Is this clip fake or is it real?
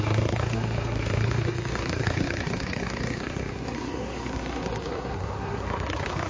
fake